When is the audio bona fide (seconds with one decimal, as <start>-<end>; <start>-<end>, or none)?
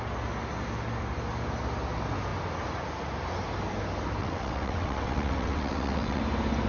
0.0-4.2; 6.2-6.7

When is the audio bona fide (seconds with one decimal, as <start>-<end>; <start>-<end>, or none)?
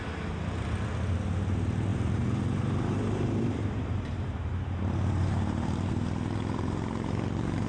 0.0-1.9; 5.9-7.7